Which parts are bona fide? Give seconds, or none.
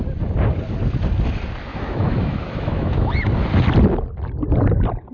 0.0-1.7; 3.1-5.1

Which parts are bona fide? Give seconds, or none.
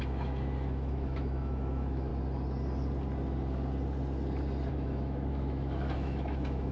2.1-4.7